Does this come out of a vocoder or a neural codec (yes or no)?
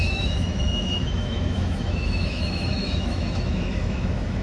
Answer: yes